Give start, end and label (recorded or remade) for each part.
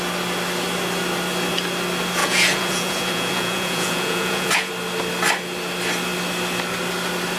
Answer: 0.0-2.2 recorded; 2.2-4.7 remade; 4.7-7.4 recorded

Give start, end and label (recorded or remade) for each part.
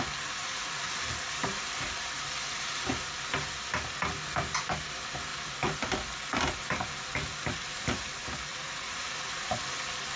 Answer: 0.0-0.5 recorded; 0.5-1.0 remade; 1.0-8.5 recorded; 8.5-9.6 remade; 9.6-10.2 recorded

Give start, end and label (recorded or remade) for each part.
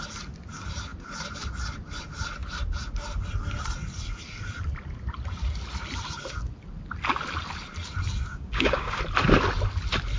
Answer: 0.0-8.3 recorded; 8.3-9.0 remade; 9.0-10.2 recorded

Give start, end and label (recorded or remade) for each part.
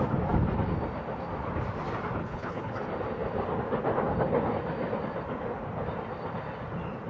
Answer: 0.0-2.2 recorded; 2.2-2.7 remade; 2.7-7.1 recorded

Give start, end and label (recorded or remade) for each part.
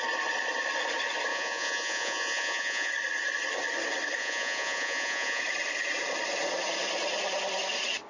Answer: 0.0-1.3 recorded; 1.3-2.9 remade; 2.9-4.2 recorded; 4.2-5.4 remade; 5.4-8.1 recorded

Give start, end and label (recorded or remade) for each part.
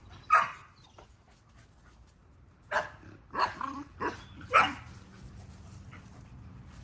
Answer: 0.0-6.8 recorded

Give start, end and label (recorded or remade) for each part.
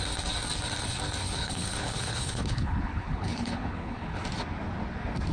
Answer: 0.0-1.2 recorded; 1.2-4.2 remade; 4.2-5.3 recorded